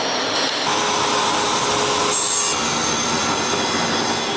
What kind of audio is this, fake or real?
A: real